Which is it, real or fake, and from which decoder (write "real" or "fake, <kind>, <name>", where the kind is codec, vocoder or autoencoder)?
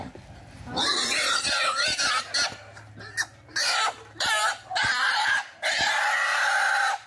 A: real